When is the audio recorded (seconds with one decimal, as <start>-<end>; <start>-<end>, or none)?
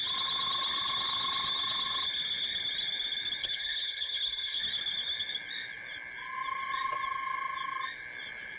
0.0-3.4; 4.6-8.6